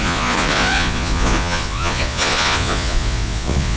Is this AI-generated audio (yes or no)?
yes